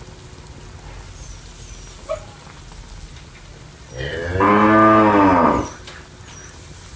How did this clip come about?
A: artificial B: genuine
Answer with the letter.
B